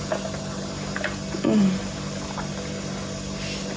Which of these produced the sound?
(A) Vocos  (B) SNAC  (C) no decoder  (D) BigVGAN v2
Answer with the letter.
C